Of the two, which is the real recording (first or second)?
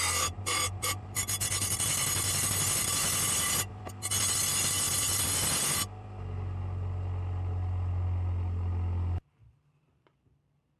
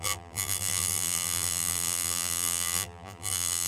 first